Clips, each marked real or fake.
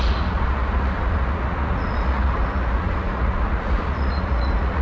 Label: fake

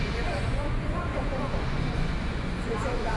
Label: fake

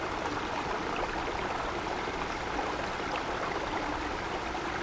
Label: real